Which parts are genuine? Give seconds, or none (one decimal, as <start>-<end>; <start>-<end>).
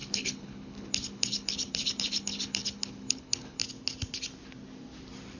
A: 3.6-5.4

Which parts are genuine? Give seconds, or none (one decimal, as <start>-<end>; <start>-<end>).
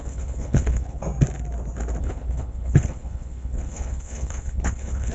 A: 1.0-2.0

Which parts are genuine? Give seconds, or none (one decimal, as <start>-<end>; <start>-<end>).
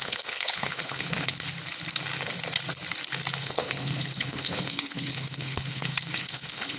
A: 1.3-3.4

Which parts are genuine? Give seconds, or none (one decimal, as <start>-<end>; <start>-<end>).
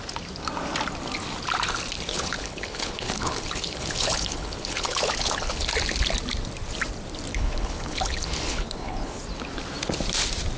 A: 0.0-2.1; 5.7-7.3; 9.2-10.6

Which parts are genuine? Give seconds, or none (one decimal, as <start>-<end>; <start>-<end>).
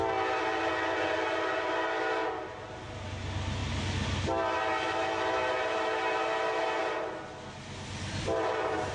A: 0.0-8.9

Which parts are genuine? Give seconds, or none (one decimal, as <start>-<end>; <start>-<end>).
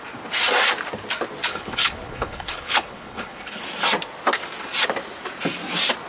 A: 0.0-1.5; 3.6-6.1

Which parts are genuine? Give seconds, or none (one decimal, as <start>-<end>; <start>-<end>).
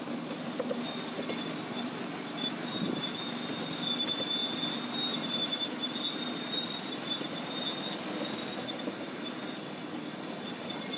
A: 0.0-11.0